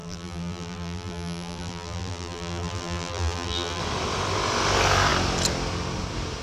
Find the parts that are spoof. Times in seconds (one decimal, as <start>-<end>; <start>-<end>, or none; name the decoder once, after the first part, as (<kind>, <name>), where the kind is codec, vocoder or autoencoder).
0.0-3.8 (vocoder, BigVGAN v2)